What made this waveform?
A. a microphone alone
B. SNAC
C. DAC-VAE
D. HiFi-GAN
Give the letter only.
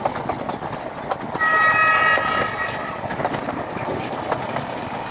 A